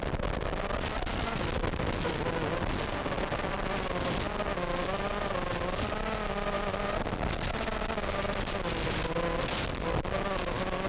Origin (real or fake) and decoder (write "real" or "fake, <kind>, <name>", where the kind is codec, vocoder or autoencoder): real